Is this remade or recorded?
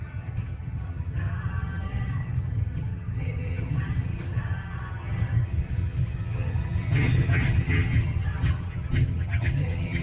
remade